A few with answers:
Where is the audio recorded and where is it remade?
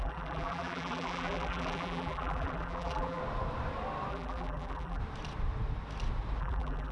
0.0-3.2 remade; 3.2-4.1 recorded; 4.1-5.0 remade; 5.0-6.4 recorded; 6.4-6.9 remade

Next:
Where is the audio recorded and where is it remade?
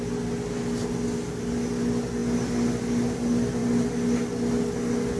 0.0-2.2 remade; 2.2-3.1 recorded; 3.1-3.6 remade; 3.6-5.2 recorded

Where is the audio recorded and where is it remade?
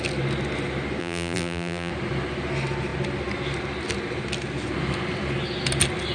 0.0-1.0 recorded; 1.0-1.9 remade; 1.9-6.1 recorded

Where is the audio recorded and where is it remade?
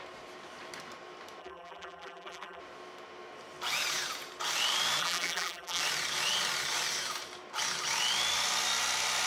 0.0-1.4 recorded; 1.4-2.6 remade; 2.6-5.0 recorded; 5.0-5.8 remade; 5.8-9.3 recorded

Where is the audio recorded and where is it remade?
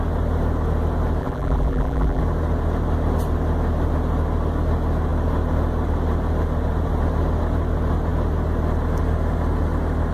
0.0-1.2 recorded; 1.2-2.2 remade; 2.2-10.1 recorded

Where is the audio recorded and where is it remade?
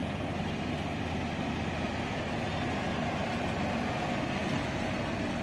0.0-5.4 recorded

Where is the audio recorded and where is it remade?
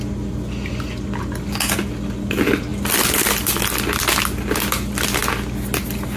0.0-6.2 recorded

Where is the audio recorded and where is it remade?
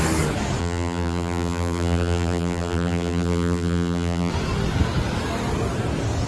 0.0-0.6 recorded; 0.6-4.3 remade; 4.3-6.3 recorded